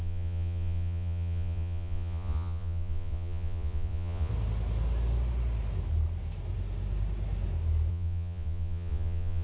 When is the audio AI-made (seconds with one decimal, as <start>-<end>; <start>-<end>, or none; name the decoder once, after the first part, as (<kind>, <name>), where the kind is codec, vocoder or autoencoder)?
0.0-4.3 (vocoder, Vocos); 7.9-9.4